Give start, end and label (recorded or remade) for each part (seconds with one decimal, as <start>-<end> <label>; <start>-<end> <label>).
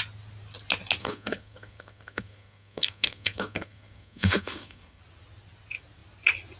0.0-1.0 recorded; 1.0-5.0 remade; 5.0-6.6 recorded